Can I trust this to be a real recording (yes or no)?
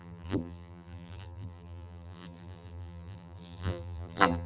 no